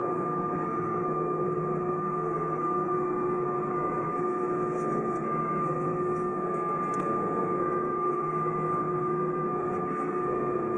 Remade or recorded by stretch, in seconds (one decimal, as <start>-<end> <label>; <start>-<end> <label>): 0.0-10.8 remade